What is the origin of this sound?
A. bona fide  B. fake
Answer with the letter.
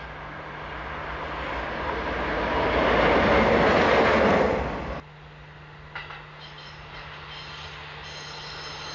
A